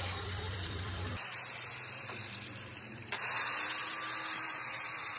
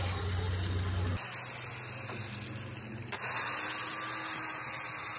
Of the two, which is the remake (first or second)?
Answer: first